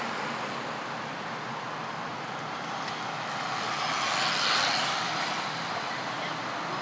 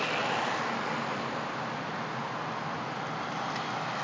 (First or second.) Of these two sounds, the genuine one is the second